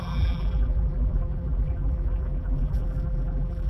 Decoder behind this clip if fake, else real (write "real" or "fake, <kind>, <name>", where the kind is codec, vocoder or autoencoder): fake, vocoder, BigVGAN v2